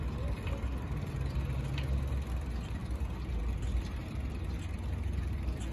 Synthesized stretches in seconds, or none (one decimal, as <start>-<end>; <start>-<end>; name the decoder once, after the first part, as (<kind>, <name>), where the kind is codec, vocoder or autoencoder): none